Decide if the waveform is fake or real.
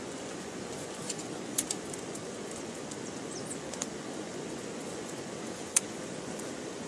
fake